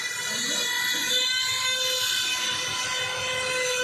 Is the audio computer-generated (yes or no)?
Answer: no